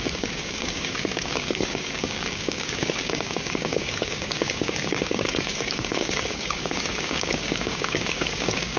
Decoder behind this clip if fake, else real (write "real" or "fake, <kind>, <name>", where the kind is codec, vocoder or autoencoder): fake, codec, DAC